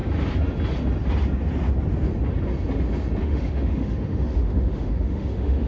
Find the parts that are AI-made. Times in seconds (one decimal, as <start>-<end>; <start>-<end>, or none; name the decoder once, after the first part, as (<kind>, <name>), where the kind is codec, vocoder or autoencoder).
3.2-5.7 (autoencoder, DAC-VAE)